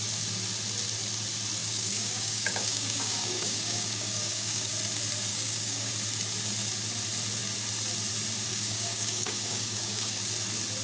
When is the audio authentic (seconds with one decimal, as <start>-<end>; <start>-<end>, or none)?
0.0-1.6; 4.7-5.3; 5.9-8.5; 10.2-10.8